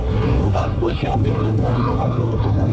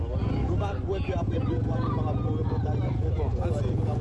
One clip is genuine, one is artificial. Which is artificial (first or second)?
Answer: first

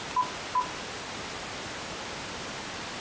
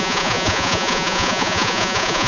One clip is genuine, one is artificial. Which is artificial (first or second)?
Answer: second